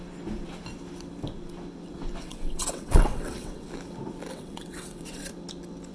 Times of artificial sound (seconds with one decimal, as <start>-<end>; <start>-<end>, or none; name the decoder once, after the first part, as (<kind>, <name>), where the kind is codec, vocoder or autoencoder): 2.2-3.7 (vocoder, WaveNeXt); 4.3-5.3